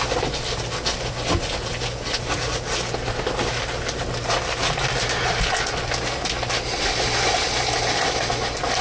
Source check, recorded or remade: recorded